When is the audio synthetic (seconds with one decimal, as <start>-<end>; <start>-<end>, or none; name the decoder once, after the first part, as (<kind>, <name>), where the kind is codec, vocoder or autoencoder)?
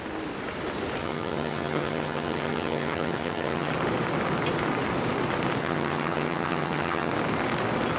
1.0-3.7 (vocoder, HiFi-GAN); 5.6-7.1